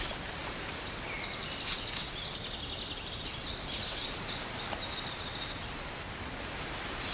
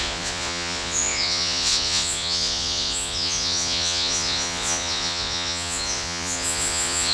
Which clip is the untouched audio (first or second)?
first